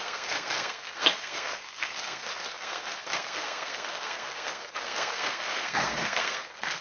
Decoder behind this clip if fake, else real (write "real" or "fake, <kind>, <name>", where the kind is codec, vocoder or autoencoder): fake, codec, SNAC